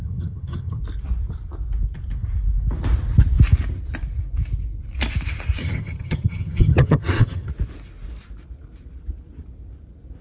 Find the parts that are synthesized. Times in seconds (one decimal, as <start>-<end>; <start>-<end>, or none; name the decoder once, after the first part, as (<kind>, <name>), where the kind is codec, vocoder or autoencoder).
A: 0.0-0.8 (vocoder, HiFi-GAN); 5.6-7.5

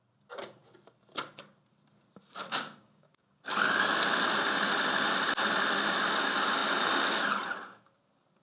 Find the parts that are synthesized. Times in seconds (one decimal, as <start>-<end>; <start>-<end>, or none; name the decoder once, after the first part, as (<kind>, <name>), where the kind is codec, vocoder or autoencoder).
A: 2.4-3.7 (codec, DAC)

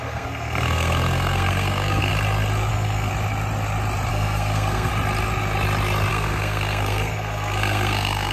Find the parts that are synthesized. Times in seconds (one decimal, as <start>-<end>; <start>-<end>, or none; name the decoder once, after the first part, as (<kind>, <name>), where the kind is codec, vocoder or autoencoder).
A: 0.0-2.1 (codec, SNAC); 2.7-3.1; 4.1-4.9; 6.1-8.3

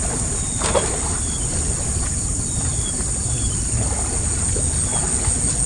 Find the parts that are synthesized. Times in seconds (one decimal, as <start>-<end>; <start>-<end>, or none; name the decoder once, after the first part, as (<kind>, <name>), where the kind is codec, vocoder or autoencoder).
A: none

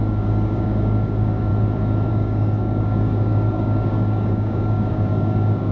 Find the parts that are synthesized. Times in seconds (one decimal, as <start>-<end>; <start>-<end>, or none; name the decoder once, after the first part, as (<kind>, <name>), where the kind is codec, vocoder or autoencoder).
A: 0.0-1.5 (codec, DAC); 2.1-5.7

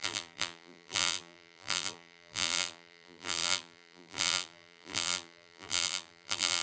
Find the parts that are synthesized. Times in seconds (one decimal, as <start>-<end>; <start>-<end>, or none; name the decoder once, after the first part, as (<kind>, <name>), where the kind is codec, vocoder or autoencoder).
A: 0.0-6.6 (vocoder, BigVGAN v2)